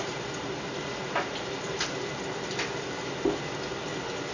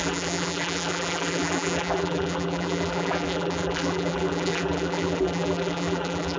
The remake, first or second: second